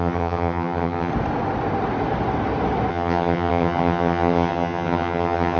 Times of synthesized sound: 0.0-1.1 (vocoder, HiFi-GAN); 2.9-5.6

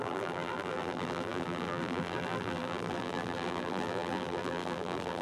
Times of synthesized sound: 0.0-5.2 (vocoder, BigVGAN v2)

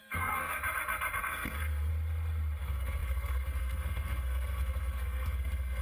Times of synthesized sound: 0.0-0.6 (codec, SNAC); 1.2-1.9; 2.6-5.8

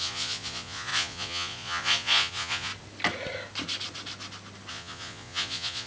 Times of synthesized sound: 0.0-2.7 (vocoder, Vocos); 4.7-5.9

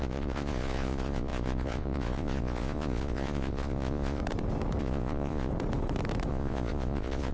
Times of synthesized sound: 0.0-4.2 (vocoder, Vocos); 4.8-5.5; 6.3-7.3

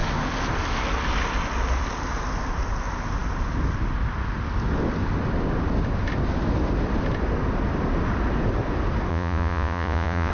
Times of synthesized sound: 9.1-10.3 (vocoder, Vocos)

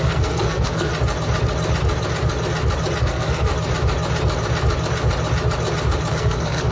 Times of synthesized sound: 0.0-0.9 (codec, SNAC); 3.0-3.5; 6.1-6.7

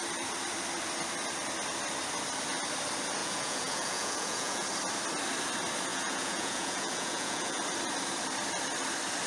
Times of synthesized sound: 3.2-4.7 (vocoder, Vocos); 5.9-7.6